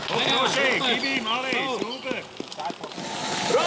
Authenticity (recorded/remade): recorded